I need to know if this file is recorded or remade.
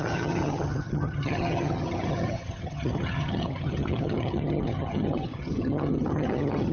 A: remade